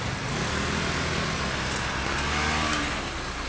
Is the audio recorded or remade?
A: recorded